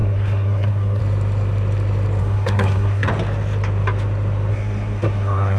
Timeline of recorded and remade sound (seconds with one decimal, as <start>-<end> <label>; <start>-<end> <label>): 0.0-1.0 remade; 1.0-2.2 recorded; 2.2-3.1 remade; 3.1-4.5 recorded; 4.5-5.6 remade